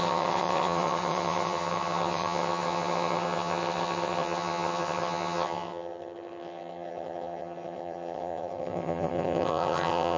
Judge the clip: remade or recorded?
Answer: remade